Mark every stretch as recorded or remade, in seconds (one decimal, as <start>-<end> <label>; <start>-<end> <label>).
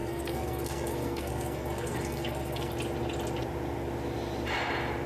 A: 0.0-2.7 remade; 2.7-5.1 recorded